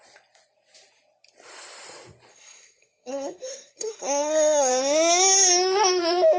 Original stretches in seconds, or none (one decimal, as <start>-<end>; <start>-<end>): 0.0-2.3; 4.7-6.4